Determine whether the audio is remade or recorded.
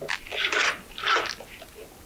recorded